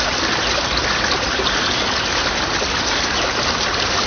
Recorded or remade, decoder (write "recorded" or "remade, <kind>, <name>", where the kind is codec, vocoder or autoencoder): recorded